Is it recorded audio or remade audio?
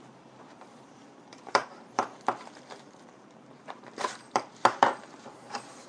remade